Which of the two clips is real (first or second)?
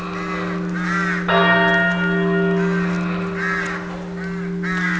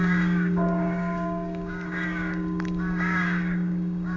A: first